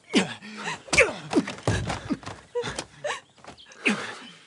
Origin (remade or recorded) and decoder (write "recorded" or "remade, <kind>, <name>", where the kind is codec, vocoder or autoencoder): recorded